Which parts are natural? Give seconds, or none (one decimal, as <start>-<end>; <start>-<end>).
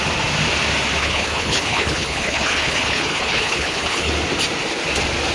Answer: 0.0-1.0; 4.1-5.3